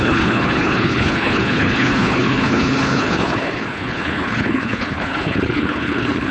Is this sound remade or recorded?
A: remade